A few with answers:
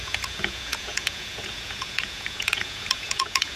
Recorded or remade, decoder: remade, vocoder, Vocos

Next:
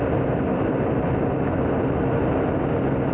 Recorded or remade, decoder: recorded